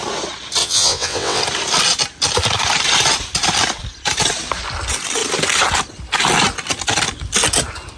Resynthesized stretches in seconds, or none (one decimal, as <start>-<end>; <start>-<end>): 0.6-1.4